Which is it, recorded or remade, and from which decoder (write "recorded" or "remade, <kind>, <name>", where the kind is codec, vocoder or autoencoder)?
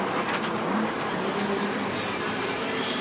remade, vocoder, BigVGAN v2